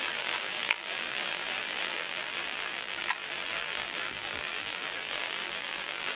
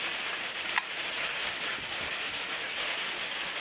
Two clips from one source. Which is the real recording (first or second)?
second